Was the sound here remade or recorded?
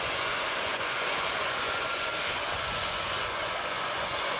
remade